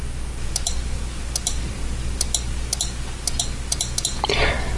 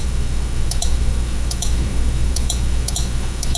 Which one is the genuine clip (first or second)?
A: first